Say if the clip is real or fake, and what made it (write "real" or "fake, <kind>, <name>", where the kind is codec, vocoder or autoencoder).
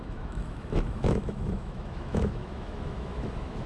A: fake, autoencoder, DAC-VAE